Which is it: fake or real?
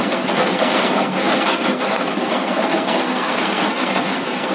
fake